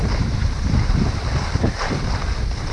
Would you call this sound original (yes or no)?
yes